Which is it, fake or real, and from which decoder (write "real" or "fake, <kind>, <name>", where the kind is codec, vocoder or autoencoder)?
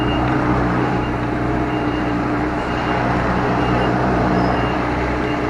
fake, vocoder, BigVGAN v2